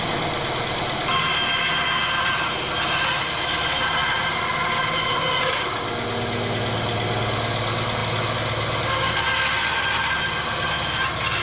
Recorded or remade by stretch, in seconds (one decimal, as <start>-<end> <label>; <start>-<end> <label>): 0.0-11.4 recorded

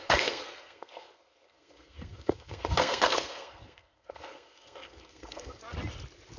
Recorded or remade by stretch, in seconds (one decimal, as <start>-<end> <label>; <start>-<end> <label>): 0.0-5.6 remade; 5.6-6.4 recorded